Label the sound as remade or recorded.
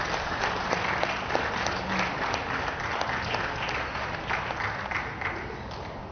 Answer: recorded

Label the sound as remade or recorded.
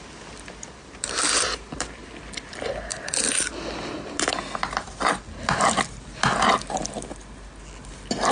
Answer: recorded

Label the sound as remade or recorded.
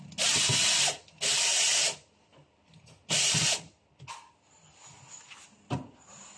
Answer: recorded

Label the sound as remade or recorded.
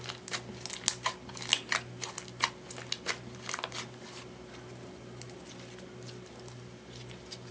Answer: recorded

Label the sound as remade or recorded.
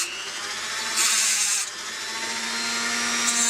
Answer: recorded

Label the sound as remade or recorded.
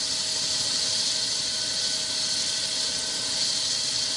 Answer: recorded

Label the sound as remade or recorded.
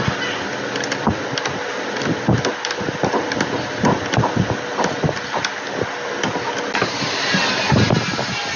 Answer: recorded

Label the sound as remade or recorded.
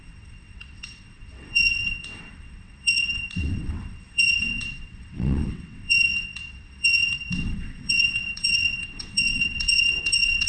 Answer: remade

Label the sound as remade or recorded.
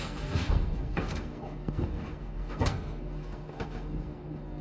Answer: remade